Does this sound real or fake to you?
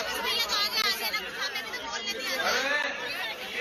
real